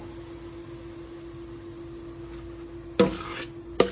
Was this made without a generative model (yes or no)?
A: yes